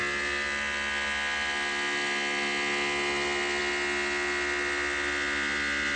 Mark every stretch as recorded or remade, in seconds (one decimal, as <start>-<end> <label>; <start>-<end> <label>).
0.0-6.0 recorded